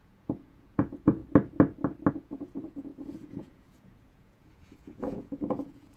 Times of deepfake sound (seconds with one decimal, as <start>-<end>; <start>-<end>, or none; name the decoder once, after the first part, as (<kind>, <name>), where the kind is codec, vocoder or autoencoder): 0.0-1.2 (vocoder, Vocos); 2.1-6.0